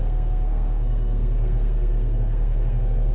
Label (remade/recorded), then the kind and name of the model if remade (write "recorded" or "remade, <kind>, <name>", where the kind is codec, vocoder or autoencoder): remade, codec, SNAC